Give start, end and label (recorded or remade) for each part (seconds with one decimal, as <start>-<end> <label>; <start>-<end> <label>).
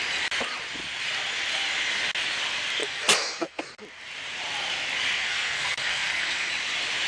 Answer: 0.0-2.8 recorded; 2.8-3.6 remade; 3.6-5.2 recorded; 5.2-6.5 remade; 6.5-7.1 recorded